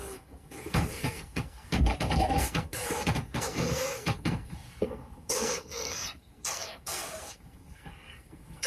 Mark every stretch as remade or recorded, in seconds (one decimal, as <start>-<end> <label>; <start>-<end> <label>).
0.0-8.7 remade